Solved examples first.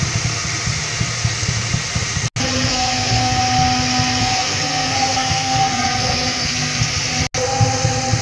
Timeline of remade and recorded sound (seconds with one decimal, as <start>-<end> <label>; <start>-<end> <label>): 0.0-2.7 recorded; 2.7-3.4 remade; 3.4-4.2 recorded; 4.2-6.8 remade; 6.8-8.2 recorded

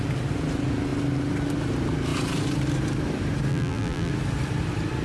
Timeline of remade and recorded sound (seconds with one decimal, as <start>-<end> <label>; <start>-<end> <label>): 0.0-3.5 recorded; 3.5-4.1 remade; 4.1-5.0 recorded

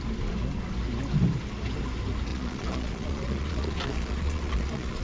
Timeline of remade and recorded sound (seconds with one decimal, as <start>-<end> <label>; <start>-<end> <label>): 0.0-2.3 recorded; 2.3-5.0 remade

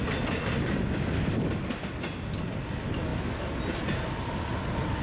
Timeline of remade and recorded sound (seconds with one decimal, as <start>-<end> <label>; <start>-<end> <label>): 0.0-5.0 recorded

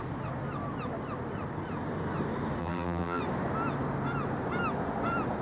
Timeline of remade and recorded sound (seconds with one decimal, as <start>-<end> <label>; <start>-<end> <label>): 0.0-2.6 recorded; 2.6-3.2 remade; 3.2-5.4 recorded

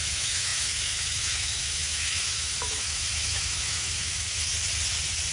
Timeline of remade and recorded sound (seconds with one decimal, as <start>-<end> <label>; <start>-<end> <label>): 0.0-4.5 remade; 4.5-5.3 recorded

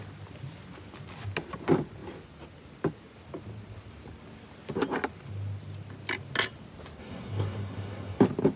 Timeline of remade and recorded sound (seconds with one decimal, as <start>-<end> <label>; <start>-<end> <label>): 0.0-7.0 recorded; 7.0-8.2 remade; 8.2-8.6 recorded

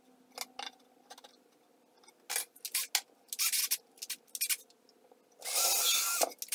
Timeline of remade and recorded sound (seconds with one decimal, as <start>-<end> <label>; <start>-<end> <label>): 0.0-6.5 recorded